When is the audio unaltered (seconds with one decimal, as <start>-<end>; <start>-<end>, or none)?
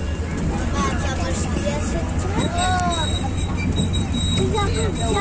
0.0-5.2